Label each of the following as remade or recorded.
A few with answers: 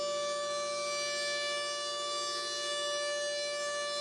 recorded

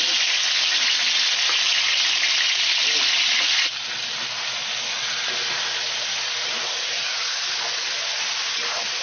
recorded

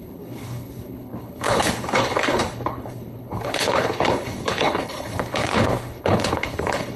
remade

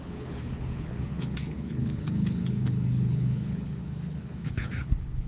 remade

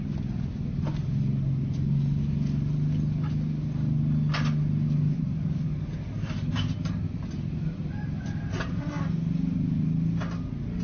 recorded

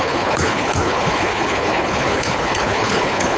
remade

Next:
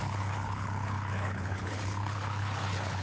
remade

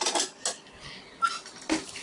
recorded